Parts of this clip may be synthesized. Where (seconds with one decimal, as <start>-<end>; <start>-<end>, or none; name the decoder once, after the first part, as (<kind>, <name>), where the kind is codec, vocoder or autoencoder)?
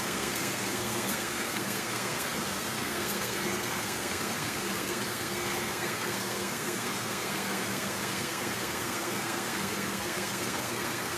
0.0-11.2 (codec, SNAC)